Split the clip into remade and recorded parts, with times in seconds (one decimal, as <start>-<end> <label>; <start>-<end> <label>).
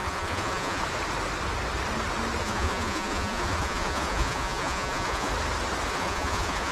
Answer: 0.0-0.8 remade; 0.8-2.4 recorded; 2.4-5.3 remade; 5.3-5.9 recorded; 5.9-6.7 remade